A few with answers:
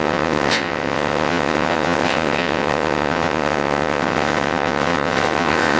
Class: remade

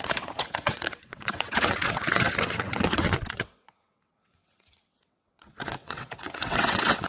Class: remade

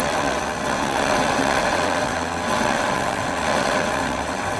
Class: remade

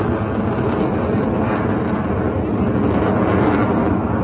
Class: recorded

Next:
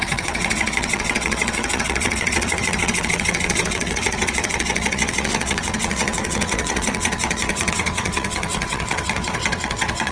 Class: remade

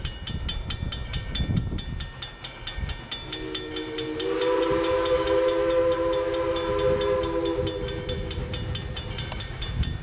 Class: recorded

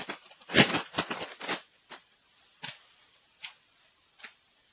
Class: recorded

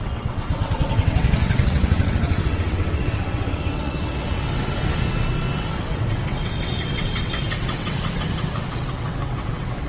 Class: remade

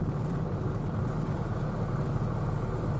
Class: recorded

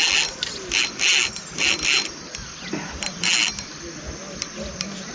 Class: recorded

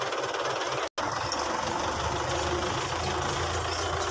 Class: recorded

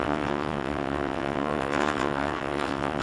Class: remade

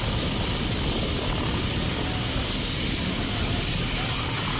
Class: recorded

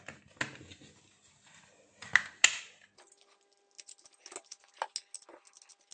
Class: recorded